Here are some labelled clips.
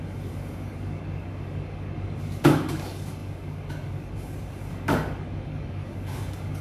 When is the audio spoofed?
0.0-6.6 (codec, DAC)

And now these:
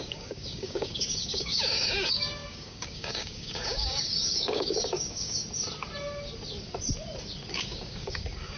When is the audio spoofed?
0.0-5.4 (codec, DAC); 7.5-8.6

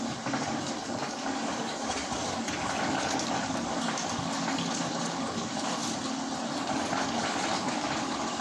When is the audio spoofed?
0.0-5.8 (codec, DAC); 6.5-8.4

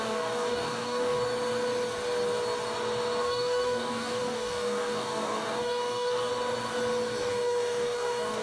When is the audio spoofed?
0.0-1.2 (codec, DAC); 3.2-6.3; 7.3-8.4

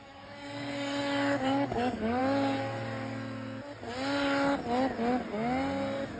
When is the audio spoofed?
0.0-2.2 (codec, DAC)

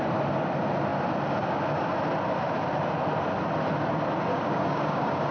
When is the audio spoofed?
4.3-5.3 (codec, DAC)